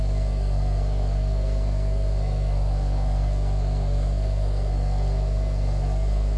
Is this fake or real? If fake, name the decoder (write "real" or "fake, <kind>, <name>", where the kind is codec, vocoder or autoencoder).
fake, codec, SNAC